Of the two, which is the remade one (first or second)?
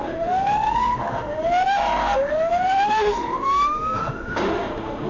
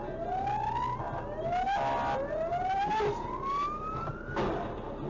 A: first